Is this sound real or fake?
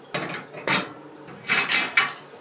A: real